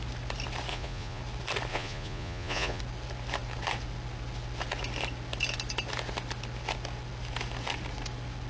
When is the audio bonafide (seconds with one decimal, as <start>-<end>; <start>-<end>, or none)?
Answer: 0.0-0.7; 1.2-1.7; 2.8-8.5